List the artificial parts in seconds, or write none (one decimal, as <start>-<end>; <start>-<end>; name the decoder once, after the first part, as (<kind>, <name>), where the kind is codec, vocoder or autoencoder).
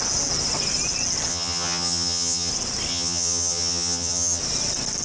1.3-2.5 (vocoder, HiFi-GAN); 2.9-4.4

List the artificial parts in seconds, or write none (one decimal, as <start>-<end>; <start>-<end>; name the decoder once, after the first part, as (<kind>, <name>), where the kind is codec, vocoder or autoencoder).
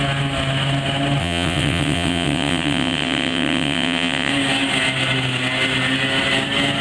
1.2-4.3 (vocoder, WaveNeXt)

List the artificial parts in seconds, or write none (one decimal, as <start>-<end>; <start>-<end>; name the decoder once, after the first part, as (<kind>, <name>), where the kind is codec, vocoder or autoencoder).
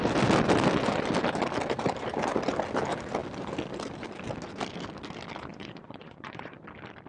5.5-6.6 (vocoder, Vocos)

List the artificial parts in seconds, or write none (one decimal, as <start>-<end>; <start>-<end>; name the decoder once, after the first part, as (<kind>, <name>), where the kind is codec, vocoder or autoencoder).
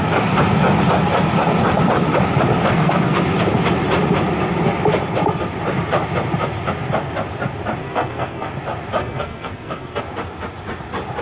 2.7-3.2 (codec, SNAC); 7.8-8.5; 9.0-10.0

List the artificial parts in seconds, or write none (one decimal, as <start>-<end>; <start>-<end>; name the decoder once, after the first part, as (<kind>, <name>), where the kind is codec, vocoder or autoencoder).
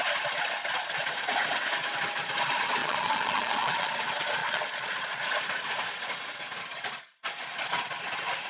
2.8-3.9 (vocoder, Vocos); 4.4-5.2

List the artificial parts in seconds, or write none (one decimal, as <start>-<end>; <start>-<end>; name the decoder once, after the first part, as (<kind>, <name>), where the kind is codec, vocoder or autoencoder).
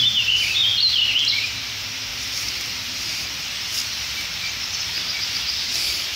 0.0-0.7 (vocoder, BigVGAN v2); 1.7-2.1; 5.8-6.2